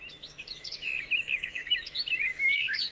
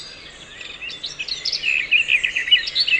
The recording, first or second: second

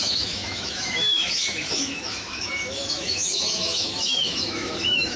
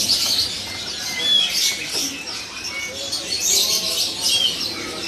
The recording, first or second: second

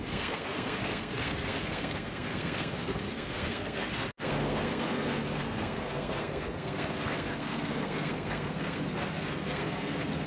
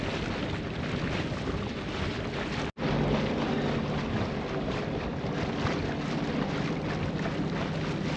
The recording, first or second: second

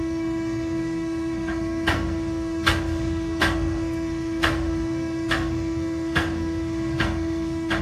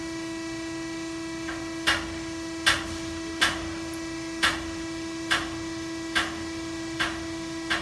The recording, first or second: second